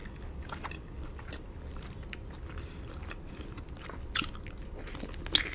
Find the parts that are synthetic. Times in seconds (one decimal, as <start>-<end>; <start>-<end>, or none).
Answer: none

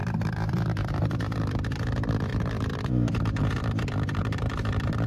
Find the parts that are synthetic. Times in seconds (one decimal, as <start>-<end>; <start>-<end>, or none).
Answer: 0.0-1.5; 2.3-3.4; 4.2-5.1